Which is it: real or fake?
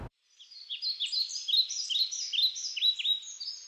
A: real